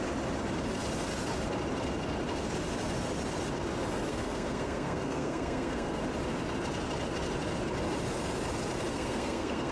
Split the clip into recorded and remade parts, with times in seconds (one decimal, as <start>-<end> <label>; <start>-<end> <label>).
0.0-4.1 recorded; 4.1-6.0 remade; 6.0-8.9 recorded; 8.9-9.7 remade